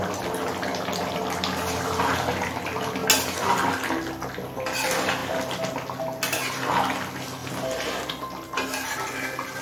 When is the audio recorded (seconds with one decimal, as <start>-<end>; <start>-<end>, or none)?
0.0-5.2; 6.0-7.4; 8.1-9.6